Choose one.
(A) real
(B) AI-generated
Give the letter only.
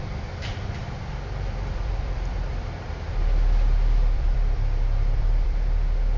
B